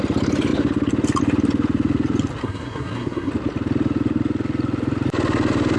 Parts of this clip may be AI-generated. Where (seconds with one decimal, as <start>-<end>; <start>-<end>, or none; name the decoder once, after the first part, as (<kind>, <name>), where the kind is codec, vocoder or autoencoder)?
2.4-3.3 (codec, SNAC)